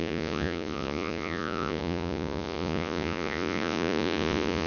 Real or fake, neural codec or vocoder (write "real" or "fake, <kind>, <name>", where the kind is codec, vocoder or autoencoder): fake, vocoder, Vocos